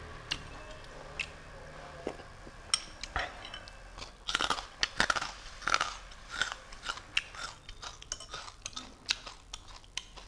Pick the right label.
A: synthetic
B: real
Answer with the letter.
B